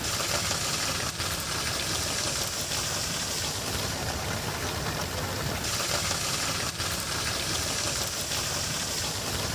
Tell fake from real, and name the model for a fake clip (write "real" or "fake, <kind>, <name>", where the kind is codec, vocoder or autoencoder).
fake, vocoder, BigVGAN v2